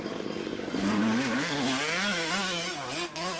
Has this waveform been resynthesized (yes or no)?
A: yes